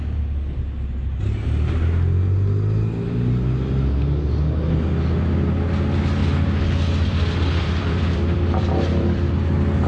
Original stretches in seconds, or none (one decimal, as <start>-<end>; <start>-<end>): 0.0-6.2; 9.3-9.9